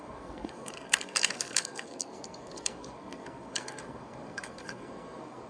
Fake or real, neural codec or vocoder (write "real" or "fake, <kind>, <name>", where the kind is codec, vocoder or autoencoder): fake, codec, SNAC